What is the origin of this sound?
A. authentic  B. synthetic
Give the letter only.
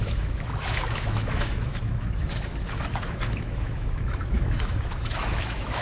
B